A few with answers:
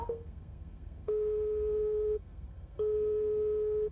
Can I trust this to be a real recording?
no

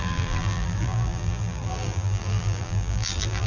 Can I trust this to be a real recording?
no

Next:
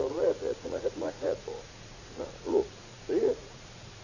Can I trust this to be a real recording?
no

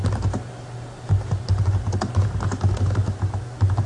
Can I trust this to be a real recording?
yes